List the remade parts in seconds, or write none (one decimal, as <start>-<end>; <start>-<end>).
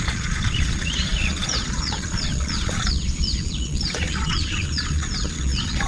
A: 0.0-5.9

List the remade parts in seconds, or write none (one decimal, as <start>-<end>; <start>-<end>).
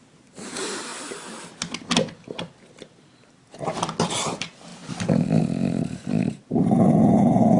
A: 0.0-0.9; 4.1-7.6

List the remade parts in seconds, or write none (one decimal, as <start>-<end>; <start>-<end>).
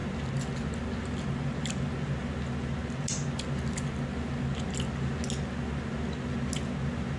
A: none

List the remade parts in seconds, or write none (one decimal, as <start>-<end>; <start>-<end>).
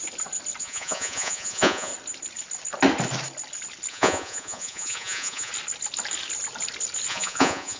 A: 0.6-1.9; 3.9-5.5; 7.1-7.8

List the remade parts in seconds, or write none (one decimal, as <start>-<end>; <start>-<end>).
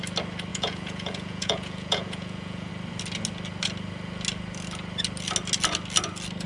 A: 0.5-2.7